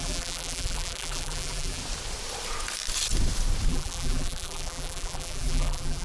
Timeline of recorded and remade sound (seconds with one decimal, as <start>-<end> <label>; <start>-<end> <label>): 0.0-1.8 remade; 1.8-3.7 recorded; 3.7-6.0 remade